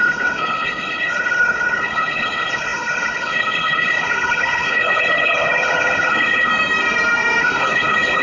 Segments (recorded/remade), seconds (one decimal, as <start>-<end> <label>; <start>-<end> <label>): 0.0-6.5 remade; 6.5-7.4 recorded; 7.4-8.2 remade